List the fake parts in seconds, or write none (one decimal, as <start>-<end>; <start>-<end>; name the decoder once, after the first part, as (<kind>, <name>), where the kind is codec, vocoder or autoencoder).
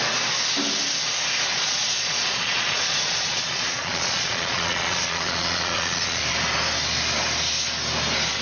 1.5-6.2 (vocoder, Vocos)